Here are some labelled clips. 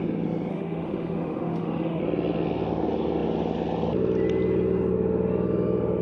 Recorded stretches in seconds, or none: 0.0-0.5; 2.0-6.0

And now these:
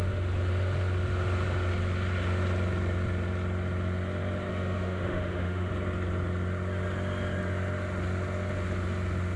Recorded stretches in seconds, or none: 0.0-4.5; 5.7-9.4

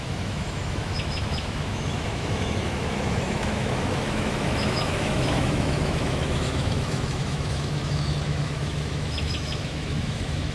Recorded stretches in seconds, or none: none

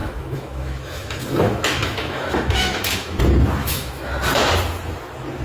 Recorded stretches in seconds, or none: 3.2-3.6; 4.1-5.4

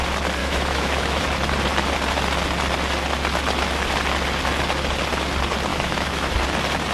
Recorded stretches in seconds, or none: 0.0-0.4; 1.2-5.7; 6.3-6.9

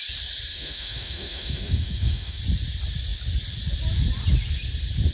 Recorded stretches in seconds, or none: 0.0-0.5; 2.4-5.1

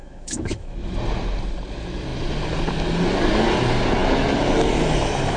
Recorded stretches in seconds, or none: 0.9-5.4

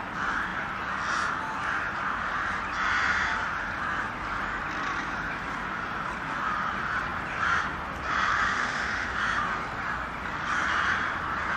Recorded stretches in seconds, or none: 0.0-8.3; 9.2-11.6